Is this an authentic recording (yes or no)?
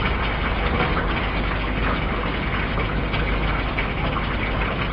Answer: yes